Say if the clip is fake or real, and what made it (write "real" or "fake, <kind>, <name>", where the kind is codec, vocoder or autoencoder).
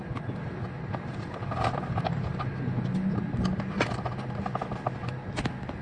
real